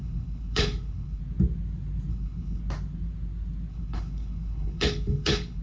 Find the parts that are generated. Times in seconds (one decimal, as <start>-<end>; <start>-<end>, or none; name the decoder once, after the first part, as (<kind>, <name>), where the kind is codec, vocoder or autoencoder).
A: 0.0-1.2 (codec, HILCodec); 2.1-2.6; 3.7-5.6